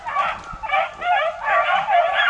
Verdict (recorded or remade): recorded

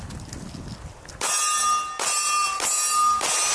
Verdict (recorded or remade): recorded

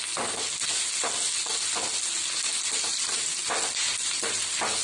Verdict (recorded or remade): recorded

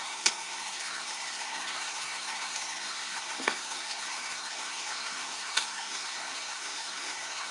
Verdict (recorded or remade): remade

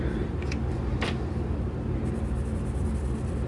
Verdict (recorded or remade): recorded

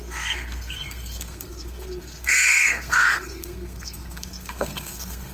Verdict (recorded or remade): remade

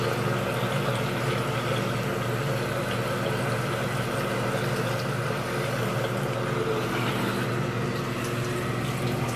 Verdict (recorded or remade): recorded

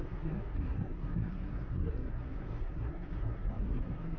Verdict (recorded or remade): remade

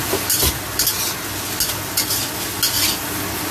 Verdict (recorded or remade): recorded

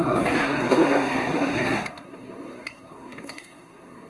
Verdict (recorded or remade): remade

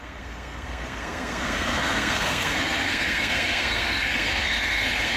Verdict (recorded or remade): remade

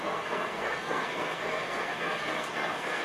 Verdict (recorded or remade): remade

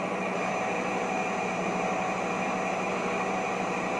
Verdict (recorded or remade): recorded